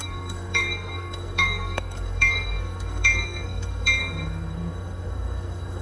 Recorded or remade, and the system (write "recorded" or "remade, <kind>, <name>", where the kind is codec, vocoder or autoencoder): remade, codec, SNAC